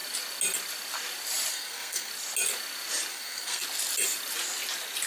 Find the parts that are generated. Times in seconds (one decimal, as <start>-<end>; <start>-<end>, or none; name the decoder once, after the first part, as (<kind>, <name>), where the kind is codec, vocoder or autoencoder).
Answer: 1.5-2.1 (codec, SNAC); 3.1-3.6